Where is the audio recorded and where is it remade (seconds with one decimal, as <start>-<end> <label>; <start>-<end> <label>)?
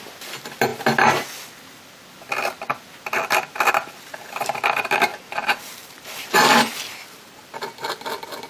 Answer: 0.0-5.1 recorded; 5.1-6.3 remade; 6.3-8.5 recorded